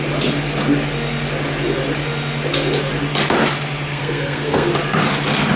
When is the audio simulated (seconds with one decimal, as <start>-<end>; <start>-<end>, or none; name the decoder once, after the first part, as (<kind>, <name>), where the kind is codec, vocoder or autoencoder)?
3.9-4.7 (codec, SNAC)